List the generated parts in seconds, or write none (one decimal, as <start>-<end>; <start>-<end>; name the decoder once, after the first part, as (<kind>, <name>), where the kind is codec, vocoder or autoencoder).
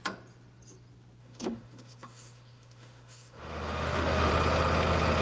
1.2-4.3 (autoencoder, DAC-VAE)